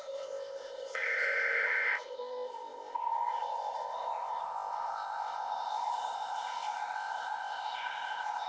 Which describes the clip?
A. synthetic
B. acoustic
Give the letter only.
A